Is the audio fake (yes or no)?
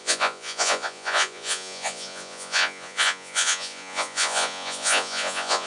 yes